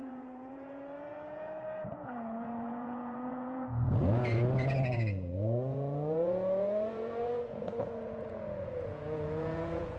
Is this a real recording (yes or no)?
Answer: no